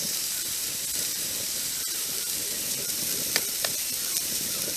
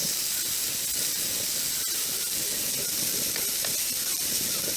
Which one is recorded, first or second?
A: second